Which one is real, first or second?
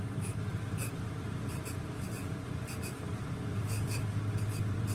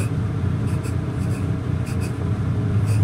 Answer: second